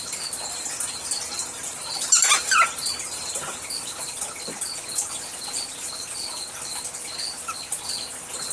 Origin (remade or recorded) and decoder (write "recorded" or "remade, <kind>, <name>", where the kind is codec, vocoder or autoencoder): recorded